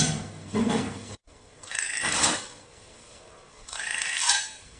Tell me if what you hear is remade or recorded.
remade